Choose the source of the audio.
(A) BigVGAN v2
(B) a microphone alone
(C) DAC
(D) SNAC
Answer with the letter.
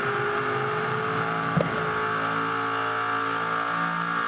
B